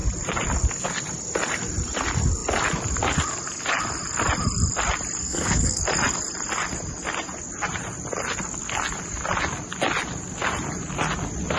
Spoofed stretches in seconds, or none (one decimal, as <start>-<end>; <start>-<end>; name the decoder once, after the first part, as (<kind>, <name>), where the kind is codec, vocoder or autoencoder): 5.2-5.8 (codec, SNAC)